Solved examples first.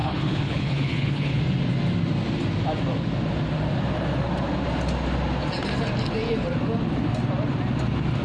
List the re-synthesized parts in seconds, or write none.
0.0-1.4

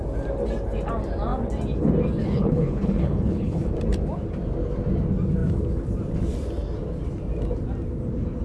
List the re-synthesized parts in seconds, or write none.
2.2-3.7

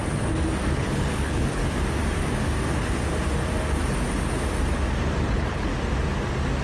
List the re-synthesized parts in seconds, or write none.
0.7-1.6; 5.3-5.7